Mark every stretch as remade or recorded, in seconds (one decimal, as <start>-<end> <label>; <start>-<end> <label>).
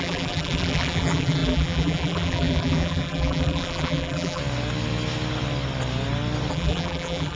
0.0-4.4 remade; 4.4-6.5 recorded; 6.5-7.4 remade